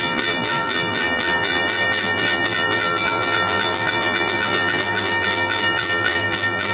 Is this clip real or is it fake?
fake